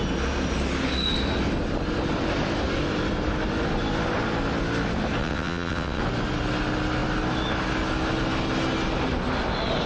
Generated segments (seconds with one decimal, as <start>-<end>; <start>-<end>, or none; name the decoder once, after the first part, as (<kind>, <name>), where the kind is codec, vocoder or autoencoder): 5.2-6.0 (vocoder, WaveNeXt)